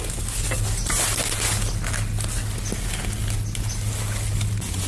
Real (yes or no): yes